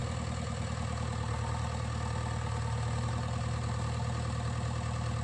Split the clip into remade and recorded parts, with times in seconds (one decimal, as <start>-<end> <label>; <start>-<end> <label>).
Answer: 0.0-5.2 recorded

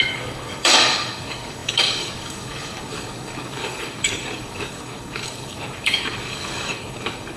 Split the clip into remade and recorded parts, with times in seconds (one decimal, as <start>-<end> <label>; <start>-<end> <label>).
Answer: 0.0-7.4 remade